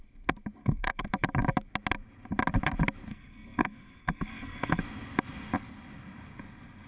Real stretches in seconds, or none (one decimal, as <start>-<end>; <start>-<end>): 0.0-0.6; 1.1-3.1; 4.8-6.9

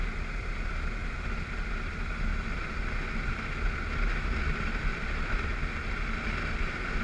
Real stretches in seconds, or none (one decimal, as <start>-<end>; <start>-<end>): 0.0-4.9; 5.6-7.0

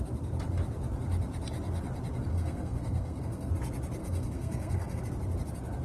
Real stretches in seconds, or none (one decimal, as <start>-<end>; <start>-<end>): 0.0-2.3; 3.5-4.0; 5.0-5.8

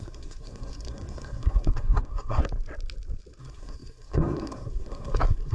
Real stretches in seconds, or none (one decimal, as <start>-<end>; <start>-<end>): 2.4-3.4

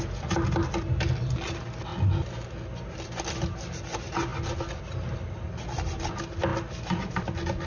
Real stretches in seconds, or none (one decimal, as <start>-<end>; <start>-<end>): 0.0-7.7

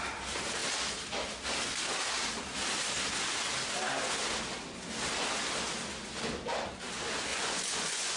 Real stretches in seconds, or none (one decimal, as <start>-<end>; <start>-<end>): 0.0-7.3

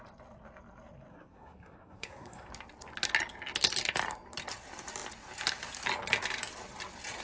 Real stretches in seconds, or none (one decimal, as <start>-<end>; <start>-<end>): 0.0-1.1; 2.5-7.2

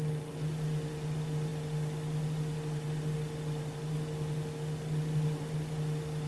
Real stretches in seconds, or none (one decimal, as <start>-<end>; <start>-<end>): 0.0-6.3